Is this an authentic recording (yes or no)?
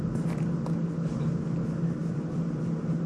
yes